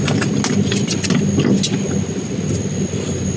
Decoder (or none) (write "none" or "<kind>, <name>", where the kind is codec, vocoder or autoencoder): none